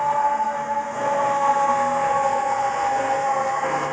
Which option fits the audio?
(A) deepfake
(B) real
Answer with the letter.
A